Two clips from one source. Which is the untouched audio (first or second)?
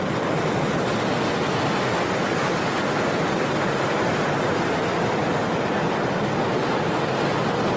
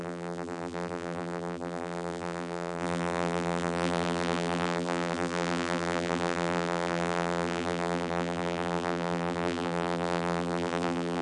first